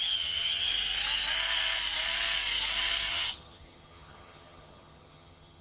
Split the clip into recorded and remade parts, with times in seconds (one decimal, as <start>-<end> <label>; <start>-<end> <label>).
0.0-0.7 remade; 0.7-3.1 recorded; 3.1-5.6 remade